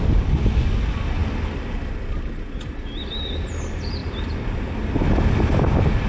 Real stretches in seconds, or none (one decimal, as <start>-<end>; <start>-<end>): 0.0-6.1